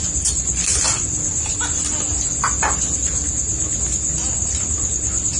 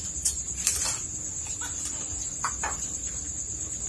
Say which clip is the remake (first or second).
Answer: second